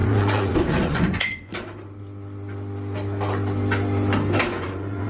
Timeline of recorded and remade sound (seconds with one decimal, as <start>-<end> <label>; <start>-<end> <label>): 0.0-1.5 remade; 1.5-4.5 recorded; 4.5-5.1 remade